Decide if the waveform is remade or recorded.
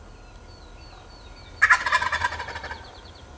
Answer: recorded